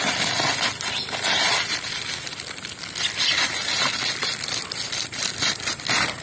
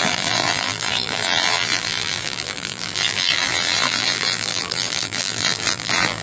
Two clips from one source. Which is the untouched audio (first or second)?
first